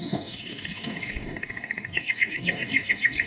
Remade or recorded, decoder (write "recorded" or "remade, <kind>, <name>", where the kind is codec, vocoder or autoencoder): remade, codec, DAC